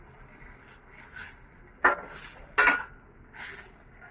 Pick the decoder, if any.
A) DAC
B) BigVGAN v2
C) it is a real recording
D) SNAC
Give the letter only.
C